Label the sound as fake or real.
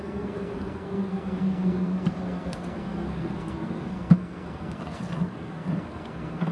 fake